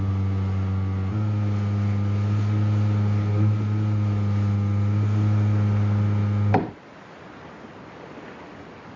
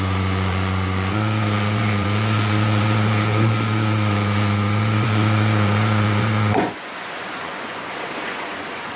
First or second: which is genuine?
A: first